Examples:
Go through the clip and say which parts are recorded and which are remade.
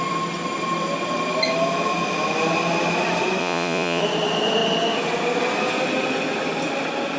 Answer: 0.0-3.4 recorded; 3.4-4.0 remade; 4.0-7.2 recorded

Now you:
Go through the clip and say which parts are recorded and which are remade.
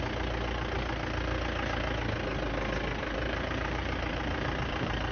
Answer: 0.0-3.0 recorded; 3.0-5.1 remade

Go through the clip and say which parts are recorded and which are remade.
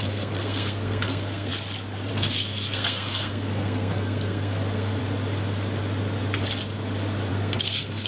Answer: 0.0-1.5 remade; 1.5-2.1 recorded; 2.1-5.0 remade; 5.0-7.3 recorded; 7.3-8.1 remade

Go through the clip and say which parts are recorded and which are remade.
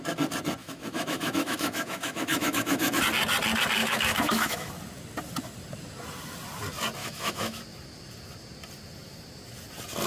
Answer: 0.0-0.6 recorded; 0.6-3.0 remade; 3.0-3.8 recorded; 3.8-4.7 remade; 4.7-7.0 recorded; 7.0-7.6 remade; 7.6-10.1 recorded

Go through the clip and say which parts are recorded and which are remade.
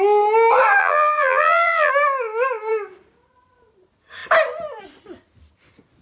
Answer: 0.0-0.8 recorded; 0.8-1.9 remade; 1.9-6.0 recorded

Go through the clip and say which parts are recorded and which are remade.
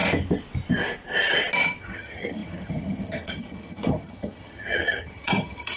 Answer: 0.0-1.8 recorded; 1.8-5.8 remade